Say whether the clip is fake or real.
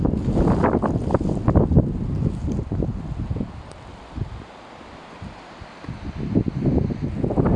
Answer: real